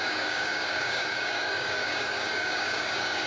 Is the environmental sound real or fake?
fake